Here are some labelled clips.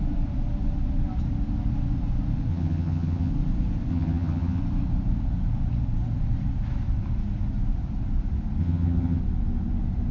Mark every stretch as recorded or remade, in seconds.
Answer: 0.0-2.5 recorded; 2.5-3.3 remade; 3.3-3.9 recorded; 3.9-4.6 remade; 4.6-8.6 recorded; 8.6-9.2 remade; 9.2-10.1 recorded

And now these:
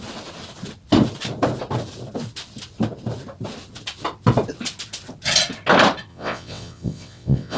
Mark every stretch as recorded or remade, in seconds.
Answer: 0.0-6.1 recorded; 6.1-7.6 remade

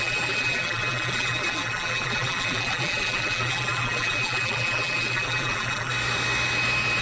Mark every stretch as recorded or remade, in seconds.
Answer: 0.0-5.9 remade; 5.9-7.0 recorded

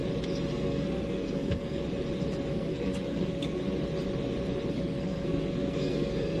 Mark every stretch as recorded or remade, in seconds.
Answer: 0.0-0.5 recorded; 0.5-1.8 remade; 1.8-2.5 recorded; 2.5-3.6 remade; 3.6-4.7 recorded; 4.7-6.4 remade

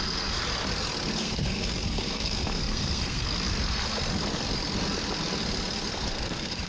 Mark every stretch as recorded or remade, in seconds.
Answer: 0.0-0.4 remade; 0.4-1.2 recorded; 1.2-3.2 remade; 3.2-5.9 recorded; 5.9-6.7 remade

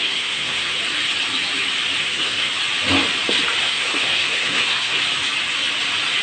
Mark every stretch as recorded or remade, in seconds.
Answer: 0.0-0.8 remade; 0.8-2.0 recorded; 2.0-2.5 remade; 2.5-3.6 recorded; 3.6-5.0 remade; 5.0-6.2 recorded

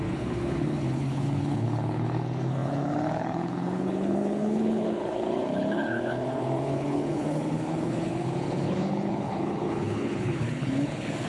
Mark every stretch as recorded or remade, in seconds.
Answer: 0.0-11.3 remade